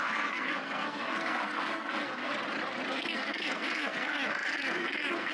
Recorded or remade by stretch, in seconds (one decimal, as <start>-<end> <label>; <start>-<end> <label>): 0.0-2.3 remade; 2.3-2.9 recorded; 2.9-5.3 remade